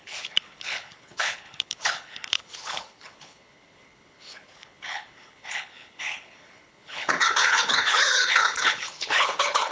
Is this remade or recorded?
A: remade